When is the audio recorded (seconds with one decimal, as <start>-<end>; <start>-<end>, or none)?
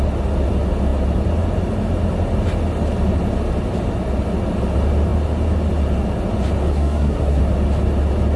0.0-6.7; 7.4-8.4